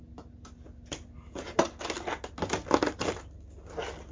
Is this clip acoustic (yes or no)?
yes